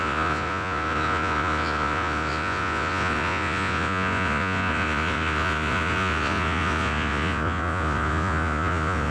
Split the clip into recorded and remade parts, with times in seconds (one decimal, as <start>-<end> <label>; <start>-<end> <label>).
0.0-9.1 remade